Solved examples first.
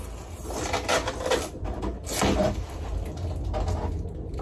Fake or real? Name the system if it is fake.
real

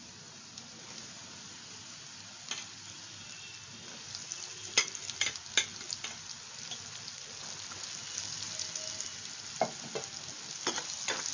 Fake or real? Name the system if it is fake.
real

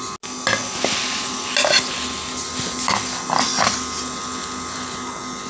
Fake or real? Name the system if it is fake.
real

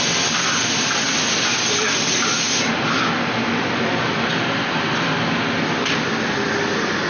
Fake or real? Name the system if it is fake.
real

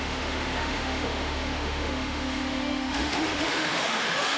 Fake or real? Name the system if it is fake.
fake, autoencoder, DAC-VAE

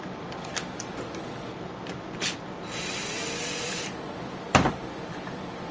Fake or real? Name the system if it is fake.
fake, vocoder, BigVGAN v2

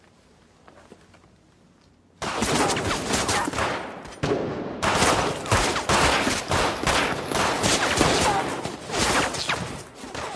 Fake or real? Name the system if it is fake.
real